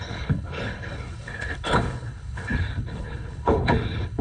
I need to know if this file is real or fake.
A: fake